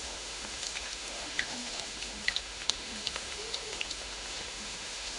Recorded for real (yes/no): no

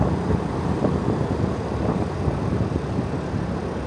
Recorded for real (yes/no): yes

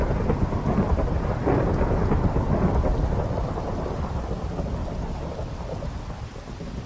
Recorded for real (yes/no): yes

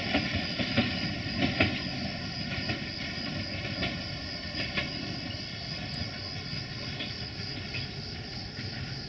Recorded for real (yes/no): yes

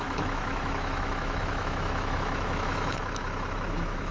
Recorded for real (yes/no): no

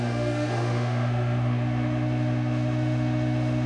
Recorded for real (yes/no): no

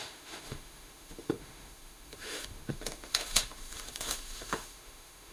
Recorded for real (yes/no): no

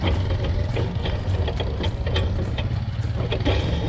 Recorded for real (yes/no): yes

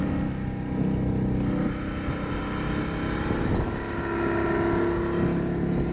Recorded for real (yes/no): yes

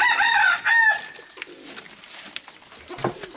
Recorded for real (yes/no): yes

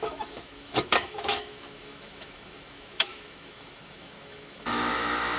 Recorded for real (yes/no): no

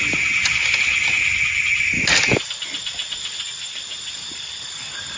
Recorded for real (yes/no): yes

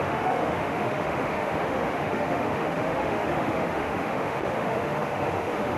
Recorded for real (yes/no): no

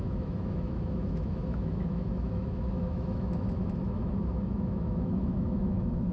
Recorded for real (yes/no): no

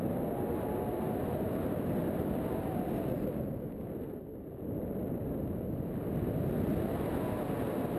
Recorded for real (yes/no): yes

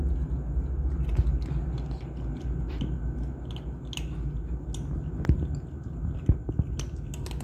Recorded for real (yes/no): yes